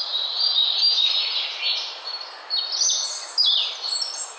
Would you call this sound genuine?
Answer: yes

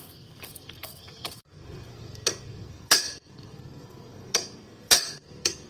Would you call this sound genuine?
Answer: no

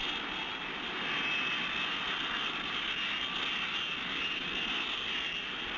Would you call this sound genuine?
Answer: yes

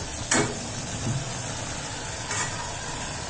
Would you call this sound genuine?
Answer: yes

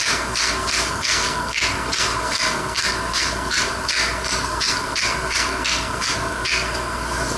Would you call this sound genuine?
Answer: no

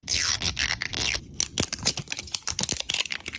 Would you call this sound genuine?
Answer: yes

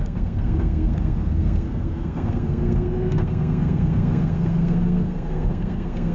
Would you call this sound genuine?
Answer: no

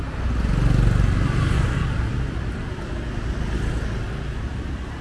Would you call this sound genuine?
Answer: yes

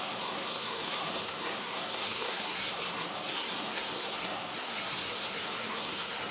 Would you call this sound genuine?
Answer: no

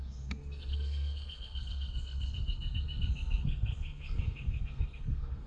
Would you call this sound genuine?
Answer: no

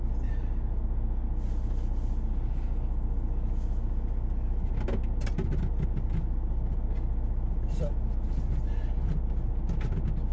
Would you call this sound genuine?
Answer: yes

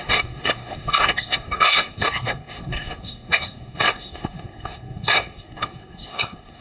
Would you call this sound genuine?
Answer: no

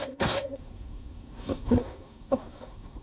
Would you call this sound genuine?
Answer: no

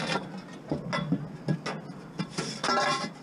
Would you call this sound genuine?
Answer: yes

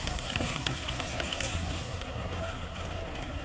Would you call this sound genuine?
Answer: no